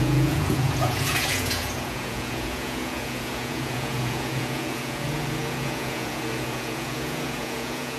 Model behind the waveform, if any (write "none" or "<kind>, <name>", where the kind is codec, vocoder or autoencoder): vocoder, Vocos